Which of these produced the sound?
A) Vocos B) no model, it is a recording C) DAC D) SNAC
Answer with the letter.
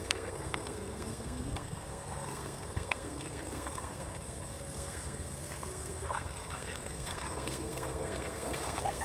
D